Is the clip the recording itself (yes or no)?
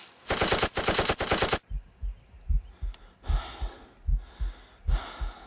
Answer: yes